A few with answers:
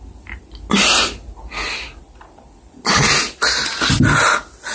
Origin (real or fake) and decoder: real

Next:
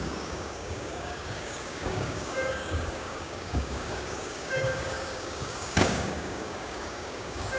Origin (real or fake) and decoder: fake, codec, DAC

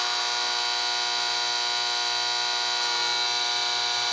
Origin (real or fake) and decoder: real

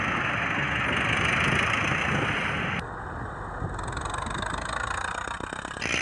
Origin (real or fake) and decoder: real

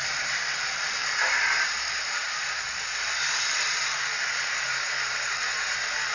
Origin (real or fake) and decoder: fake, vocoder, BigVGAN v2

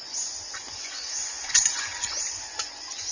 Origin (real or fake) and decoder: fake, vocoder, Vocos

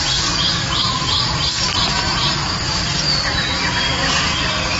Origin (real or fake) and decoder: real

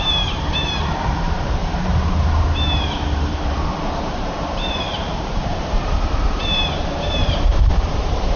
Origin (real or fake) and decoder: fake, vocoder, BigVGAN v2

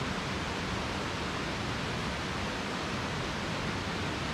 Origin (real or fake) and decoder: real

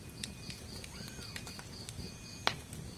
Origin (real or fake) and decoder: real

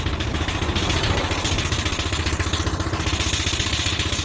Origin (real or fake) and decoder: real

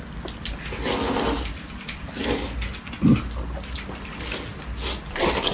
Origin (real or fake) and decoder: real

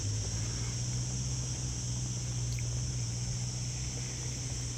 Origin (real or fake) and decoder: real